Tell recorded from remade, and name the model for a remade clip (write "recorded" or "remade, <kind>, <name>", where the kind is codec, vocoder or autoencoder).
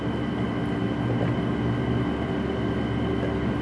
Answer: recorded